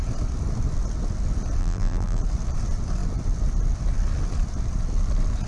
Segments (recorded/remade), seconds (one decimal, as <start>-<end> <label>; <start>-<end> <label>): 0.0-1.6 recorded; 1.6-2.2 remade; 2.2-5.5 recorded